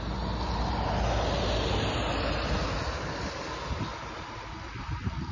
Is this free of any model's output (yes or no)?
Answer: yes